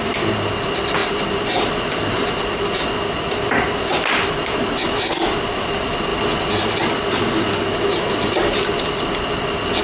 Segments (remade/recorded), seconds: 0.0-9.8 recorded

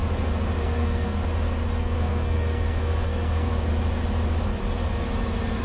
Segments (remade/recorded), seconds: 0.0-0.6 recorded; 0.6-1.2 remade; 1.2-1.8 recorded; 1.8-3.7 remade; 3.7-5.6 recorded

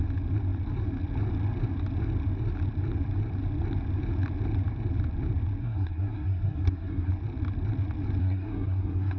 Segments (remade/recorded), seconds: 0.0-5.6 recorded; 5.6-7.1 remade; 7.1-8.2 recorded; 8.2-9.2 remade

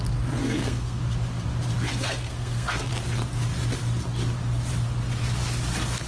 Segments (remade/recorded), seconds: 0.0-0.4 recorded; 0.4-1.0 remade; 1.0-1.9 recorded; 1.9-2.9 remade; 2.9-6.1 recorded

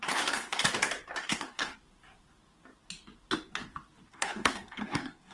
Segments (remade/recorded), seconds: 0.0-0.6 remade; 0.6-1.2 recorded; 1.2-1.7 remade; 1.7-4.1 recorded; 4.1-5.3 remade

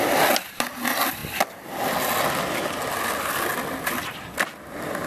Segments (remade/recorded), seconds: 0.0-5.1 recorded